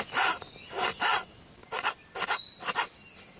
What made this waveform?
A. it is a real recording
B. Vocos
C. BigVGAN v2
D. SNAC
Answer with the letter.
A